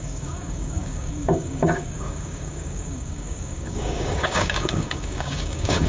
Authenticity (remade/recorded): remade